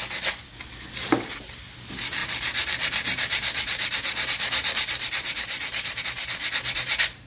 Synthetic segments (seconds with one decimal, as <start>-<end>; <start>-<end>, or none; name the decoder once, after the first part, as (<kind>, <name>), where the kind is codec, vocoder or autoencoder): 2.2-6.0 (vocoder, BigVGAN v2)